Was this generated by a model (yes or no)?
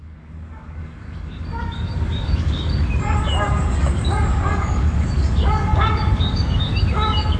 yes